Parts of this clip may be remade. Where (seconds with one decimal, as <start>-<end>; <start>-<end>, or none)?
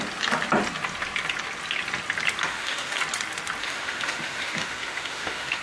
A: 2.5-3.0; 3.6-5.6